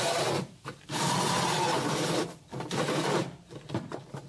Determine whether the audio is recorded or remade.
recorded